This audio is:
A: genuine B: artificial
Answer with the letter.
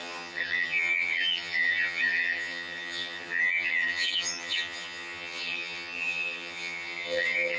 B